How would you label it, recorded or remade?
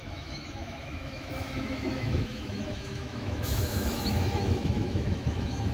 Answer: remade